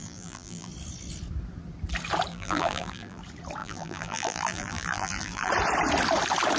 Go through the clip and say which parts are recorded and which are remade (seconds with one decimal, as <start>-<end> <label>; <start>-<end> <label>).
0.0-0.7 remade; 0.7-2.3 recorded; 2.3-3.2 remade; 3.2-3.6 recorded; 3.6-5.5 remade; 5.5-6.6 recorded